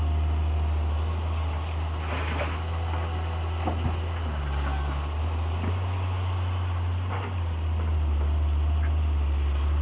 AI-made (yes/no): no